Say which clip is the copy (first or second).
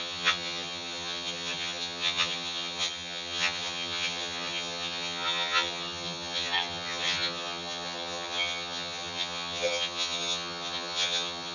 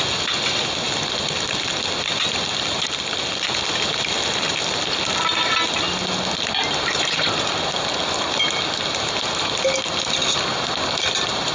first